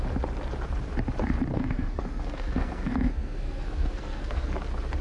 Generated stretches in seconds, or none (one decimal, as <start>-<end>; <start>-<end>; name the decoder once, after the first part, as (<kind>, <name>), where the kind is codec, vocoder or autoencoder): 1.5-4.5 (codec, SNAC)